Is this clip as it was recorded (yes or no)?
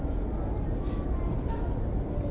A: yes